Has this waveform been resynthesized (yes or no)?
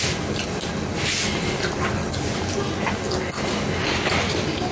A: no